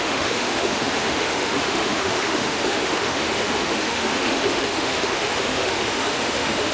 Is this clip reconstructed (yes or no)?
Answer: yes